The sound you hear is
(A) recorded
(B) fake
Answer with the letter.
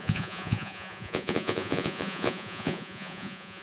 B